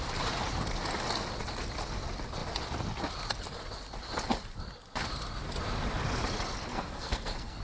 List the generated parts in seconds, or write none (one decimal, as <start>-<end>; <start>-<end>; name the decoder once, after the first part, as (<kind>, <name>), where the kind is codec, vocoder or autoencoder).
6.7-7.6 (codec, SNAC)